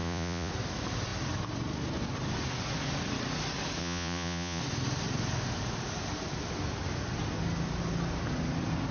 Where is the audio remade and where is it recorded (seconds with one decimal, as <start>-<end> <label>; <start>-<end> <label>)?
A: 0.0-0.5 remade; 0.5-3.8 recorded; 3.8-4.6 remade; 4.6-8.9 recorded